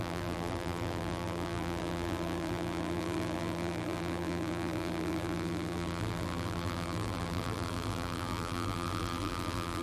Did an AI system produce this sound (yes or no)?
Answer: yes